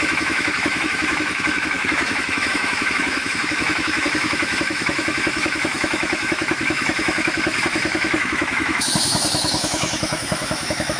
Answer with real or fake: fake